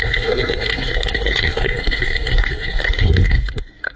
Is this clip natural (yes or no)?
no